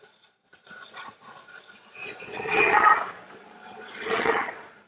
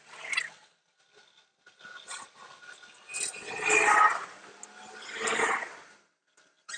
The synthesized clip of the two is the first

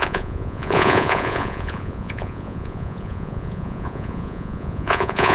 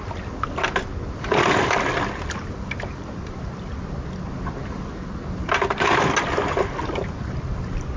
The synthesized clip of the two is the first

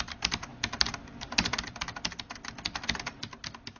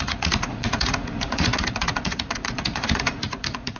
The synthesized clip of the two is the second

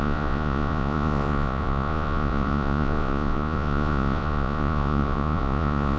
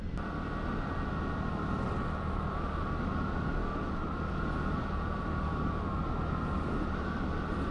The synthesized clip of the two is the first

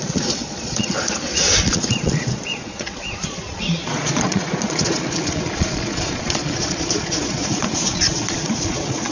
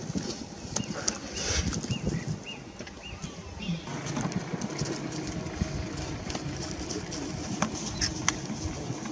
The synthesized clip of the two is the first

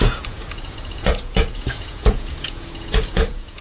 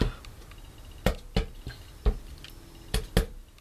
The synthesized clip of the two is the first